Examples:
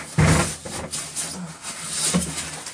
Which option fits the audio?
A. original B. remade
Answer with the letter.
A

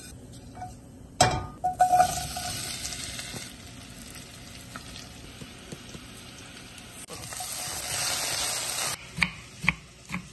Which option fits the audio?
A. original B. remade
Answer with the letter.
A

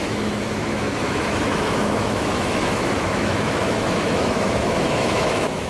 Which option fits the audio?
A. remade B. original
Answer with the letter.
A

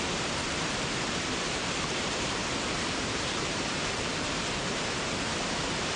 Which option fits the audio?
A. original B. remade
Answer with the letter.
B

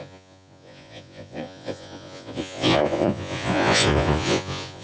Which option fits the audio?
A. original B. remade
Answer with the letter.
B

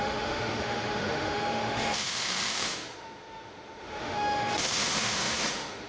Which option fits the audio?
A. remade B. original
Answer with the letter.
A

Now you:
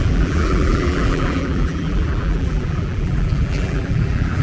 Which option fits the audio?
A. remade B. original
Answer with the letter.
A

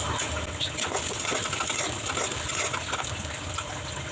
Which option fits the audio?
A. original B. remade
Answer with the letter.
A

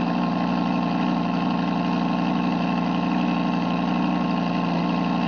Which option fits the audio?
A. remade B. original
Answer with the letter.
B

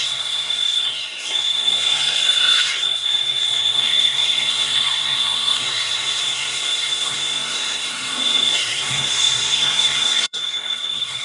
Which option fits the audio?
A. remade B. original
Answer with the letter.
A